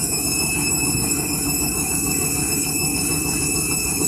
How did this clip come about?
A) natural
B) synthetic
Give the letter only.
B